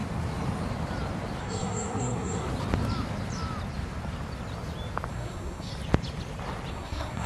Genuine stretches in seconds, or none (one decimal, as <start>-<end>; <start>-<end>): 0.0-1.4; 2.5-5.1; 5.7-6.7